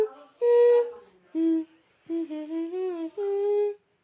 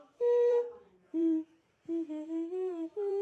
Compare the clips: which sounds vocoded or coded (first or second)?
second